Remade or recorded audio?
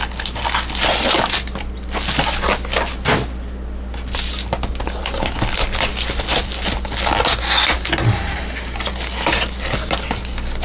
recorded